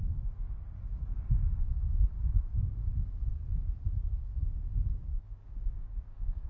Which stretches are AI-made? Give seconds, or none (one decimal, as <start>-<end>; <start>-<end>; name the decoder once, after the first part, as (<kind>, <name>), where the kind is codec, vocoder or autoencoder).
5.1-6.5 (codec, DAC)